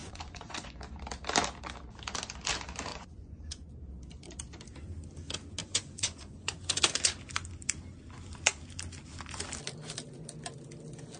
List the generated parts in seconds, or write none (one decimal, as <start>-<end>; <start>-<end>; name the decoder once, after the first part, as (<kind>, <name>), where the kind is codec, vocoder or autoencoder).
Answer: 0.0-0.8 (vocoder, Vocos); 2.9-3.7; 5.6-6.8